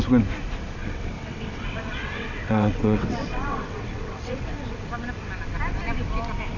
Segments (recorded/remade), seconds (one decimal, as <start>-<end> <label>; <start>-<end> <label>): 0.0-0.8 recorded; 0.8-4.8 remade; 4.8-6.6 recorded